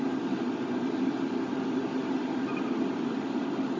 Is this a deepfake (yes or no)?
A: no